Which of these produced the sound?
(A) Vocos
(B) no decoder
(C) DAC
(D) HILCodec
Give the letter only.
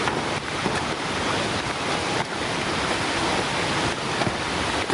B